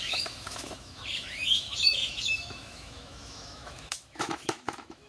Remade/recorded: remade